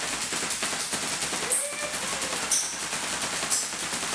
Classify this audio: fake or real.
real